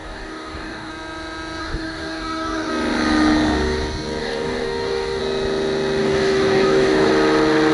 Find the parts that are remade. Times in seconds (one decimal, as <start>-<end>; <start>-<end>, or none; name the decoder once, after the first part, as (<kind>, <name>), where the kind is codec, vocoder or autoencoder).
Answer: 0.0-0.9 (codec, DAC); 1.6-2.7; 4.2-5.2; 6.0-7.1